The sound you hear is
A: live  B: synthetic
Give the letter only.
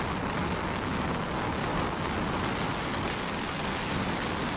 A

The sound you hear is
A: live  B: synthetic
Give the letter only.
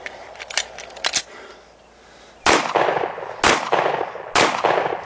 A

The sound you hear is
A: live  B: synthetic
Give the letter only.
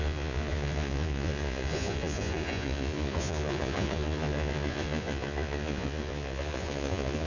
B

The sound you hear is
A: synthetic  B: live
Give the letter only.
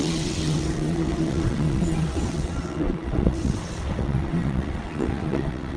A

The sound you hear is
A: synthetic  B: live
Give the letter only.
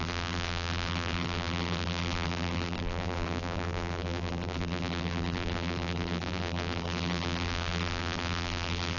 A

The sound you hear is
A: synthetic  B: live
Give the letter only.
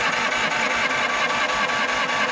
B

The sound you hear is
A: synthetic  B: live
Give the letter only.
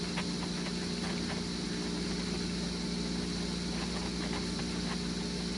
B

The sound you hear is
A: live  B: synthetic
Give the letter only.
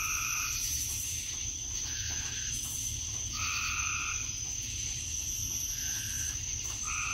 B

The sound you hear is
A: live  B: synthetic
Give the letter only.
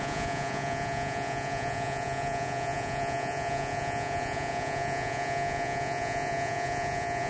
B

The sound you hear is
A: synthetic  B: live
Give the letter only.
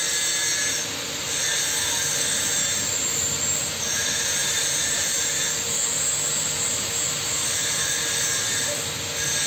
B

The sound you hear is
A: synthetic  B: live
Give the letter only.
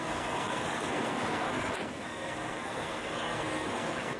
A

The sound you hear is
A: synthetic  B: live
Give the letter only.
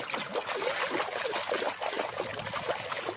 B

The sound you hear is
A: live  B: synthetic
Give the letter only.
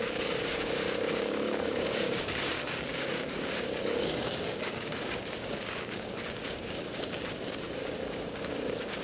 B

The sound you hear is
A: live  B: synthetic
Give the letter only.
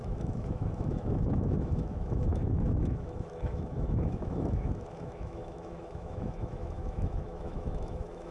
B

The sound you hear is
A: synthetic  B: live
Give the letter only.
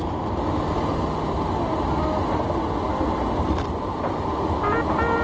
B